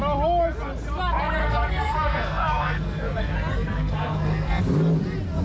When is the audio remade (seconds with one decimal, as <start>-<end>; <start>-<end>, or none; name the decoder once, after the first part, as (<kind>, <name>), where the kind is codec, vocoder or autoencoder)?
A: 1.4-4.6 (codec, SNAC)